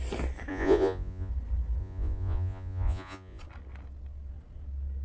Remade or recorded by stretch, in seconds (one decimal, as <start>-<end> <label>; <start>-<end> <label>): 0.0-0.5 recorded; 0.5-1.3 remade; 1.3-1.8 recorded; 1.8-3.4 remade; 3.4-5.0 recorded